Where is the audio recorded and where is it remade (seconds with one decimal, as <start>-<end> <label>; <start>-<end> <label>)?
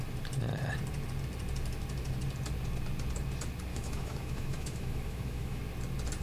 0.0-3.7 recorded; 3.7-5.6 remade; 5.6-6.2 recorded